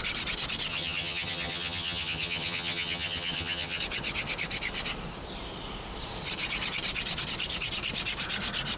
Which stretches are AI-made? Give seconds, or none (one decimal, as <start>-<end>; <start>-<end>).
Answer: 0.7-3.8